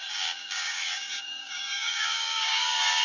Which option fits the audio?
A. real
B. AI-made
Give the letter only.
B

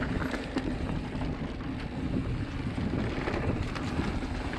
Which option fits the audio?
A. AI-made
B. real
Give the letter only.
B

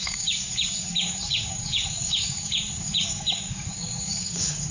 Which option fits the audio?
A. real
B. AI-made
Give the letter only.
B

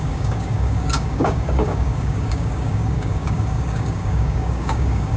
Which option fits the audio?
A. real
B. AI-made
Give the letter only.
B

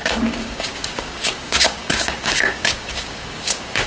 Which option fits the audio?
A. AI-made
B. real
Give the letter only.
A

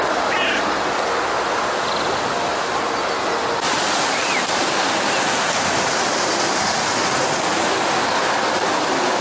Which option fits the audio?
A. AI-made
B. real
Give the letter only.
B